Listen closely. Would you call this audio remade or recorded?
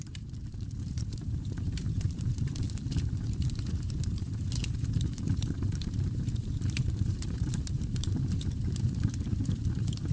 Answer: remade